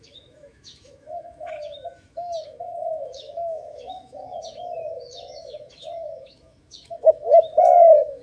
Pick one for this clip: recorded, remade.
remade